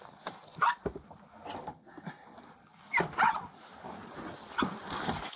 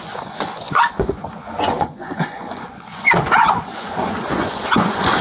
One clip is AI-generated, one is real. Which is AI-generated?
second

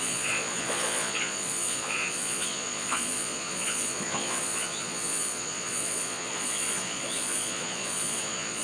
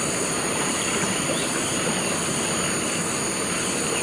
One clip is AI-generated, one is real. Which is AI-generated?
first